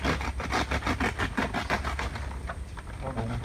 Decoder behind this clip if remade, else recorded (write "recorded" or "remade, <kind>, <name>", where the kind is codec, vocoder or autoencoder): recorded